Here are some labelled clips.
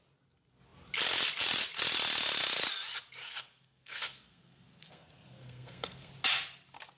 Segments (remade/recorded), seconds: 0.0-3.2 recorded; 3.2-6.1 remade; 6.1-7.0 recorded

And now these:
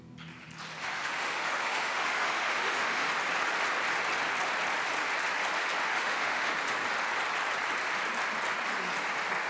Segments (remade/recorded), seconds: 0.0-0.8 recorded; 0.8-3.1 remade; 3.1-5.8 recorded; 5.8-6.5 remade; 6.5-9.5 recorded

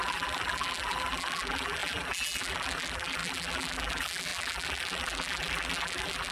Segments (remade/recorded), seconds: 0.0-6.3 remade

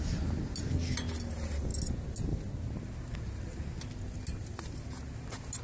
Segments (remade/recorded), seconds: 0.0-5.6 recorded

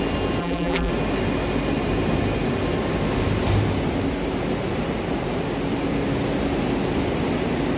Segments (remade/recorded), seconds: 0.0-0.4 recorded; 0.4-0.9 remade; 0.9-7.8 recorded

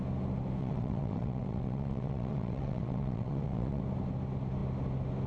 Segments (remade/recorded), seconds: 0.0-0.6 recorded; 0.6-3.8 remade; 3.8-5.3 recorded

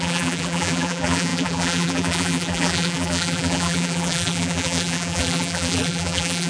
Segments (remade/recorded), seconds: 0.0-6.5 remade

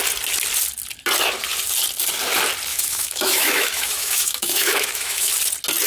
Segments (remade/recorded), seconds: 0.0-2.7 recorded; 2.7-5.3 remade; 5.3-5.9 recorded